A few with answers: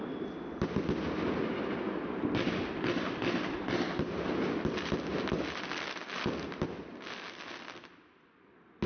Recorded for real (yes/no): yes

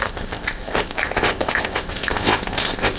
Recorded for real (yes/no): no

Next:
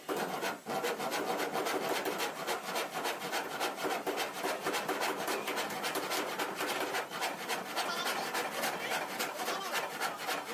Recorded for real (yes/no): yes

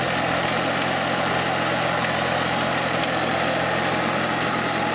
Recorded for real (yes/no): yes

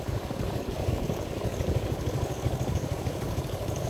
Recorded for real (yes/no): no